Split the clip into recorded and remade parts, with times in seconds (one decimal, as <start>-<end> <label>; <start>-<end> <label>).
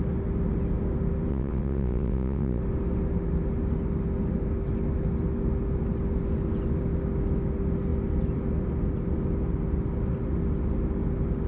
0.0-1.3 recorded; 1.3-2.6 remade; 2.6-11.5 recorded